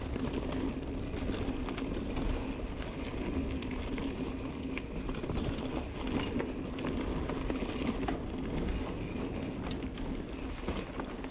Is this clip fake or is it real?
real